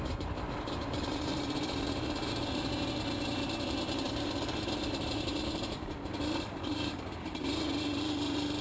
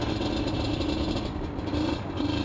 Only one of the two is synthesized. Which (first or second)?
first